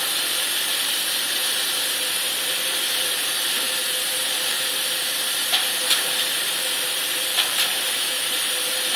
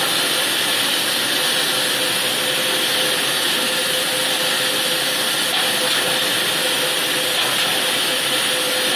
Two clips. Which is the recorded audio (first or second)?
second